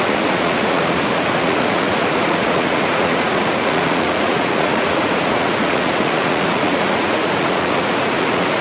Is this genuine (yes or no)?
no